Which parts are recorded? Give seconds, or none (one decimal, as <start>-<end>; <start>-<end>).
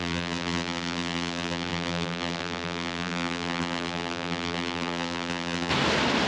5.7-6.3